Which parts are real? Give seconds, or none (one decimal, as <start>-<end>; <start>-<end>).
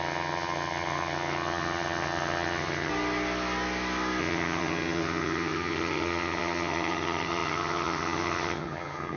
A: 2.9-4.2